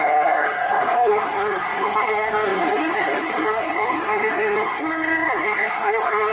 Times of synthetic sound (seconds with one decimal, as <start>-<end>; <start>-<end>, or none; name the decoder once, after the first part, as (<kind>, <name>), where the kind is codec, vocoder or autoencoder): 0.0-6.3 (codec, SNAC)